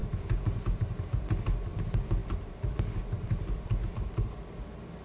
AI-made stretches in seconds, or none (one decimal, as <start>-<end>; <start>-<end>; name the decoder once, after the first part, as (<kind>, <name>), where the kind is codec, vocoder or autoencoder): none